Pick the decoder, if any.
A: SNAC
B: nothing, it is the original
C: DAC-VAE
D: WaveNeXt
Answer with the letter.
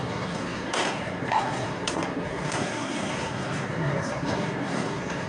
A